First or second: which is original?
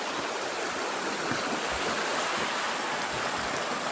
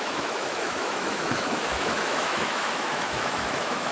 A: first